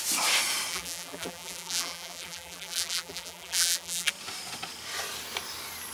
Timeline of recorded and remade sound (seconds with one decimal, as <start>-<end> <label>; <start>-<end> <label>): 0.0-0.7 recorded; 0.7-4.1 remade; 4.1-5.9 recorded